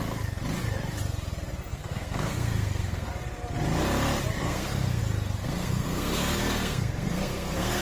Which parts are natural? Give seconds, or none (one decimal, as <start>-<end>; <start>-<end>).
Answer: 0.0-1.7; 3.1-4.4; 5.0-5.4